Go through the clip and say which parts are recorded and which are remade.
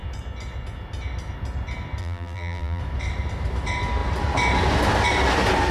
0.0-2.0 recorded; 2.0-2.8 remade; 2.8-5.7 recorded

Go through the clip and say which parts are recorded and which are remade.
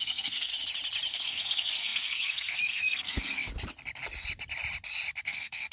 0.0-0.5 remade; 0.5-1.1 recorded; 1.1-3.5 remade; 3.5-5.2 recorded; 5.2-5.7 remade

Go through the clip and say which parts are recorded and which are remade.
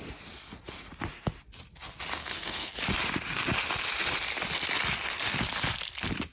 0.0-2.2 recorded; 2.2-2.7 remade; 2.7-6.3 recorded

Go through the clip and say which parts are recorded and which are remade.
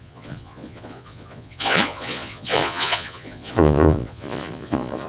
0.0-5.1 remade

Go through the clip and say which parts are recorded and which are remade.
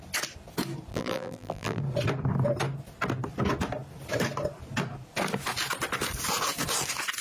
0.0-0.9 recorded; 0.9-1.8 remade; 1.8-7.2 recorded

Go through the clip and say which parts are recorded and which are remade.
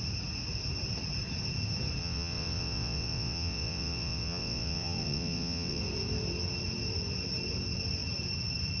0.0-2.0 recorded; 2.0-5.8 remade; 5.8-8.8 recorded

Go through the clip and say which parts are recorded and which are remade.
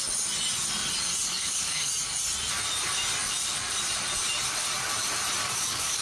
0.0-1.3 recorded; 1.3-1.9 remade; 1.9-5.4 recorded; 5.4-6.0 remade